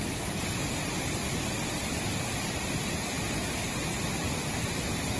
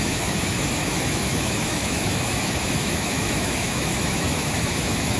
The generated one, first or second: second